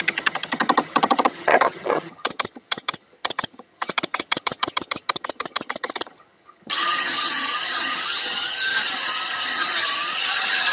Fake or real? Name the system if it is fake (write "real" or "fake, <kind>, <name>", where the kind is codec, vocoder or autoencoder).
fake, vocoder, HiFi-GAN